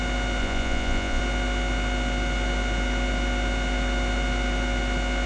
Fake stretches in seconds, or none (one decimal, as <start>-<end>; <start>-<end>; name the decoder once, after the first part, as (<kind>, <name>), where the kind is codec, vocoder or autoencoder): 0.4-1.2 (vocoder, Vocos)